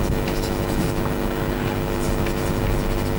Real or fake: real